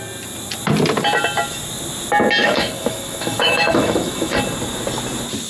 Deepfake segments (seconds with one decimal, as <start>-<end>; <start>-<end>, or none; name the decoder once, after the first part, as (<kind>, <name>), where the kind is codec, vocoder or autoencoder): 2.4-4.4 (autoencoder, DAC-VAE)